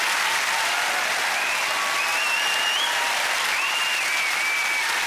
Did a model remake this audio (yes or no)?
no